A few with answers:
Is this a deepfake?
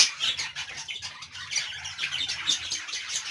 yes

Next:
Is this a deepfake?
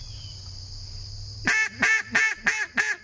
no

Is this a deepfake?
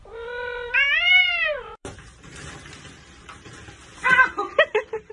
yes